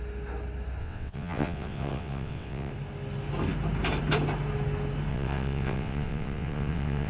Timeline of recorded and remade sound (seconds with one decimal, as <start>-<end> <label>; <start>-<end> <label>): 0.0-0.8 recorded; 0.8-2.7 remade; 2.7-5.1 recorded; 5.1-7.1 remade